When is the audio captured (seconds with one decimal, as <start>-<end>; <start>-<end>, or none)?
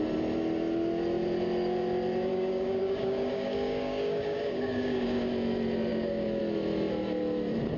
0.0-2.3; 5.3-5.9; 6.4-7.8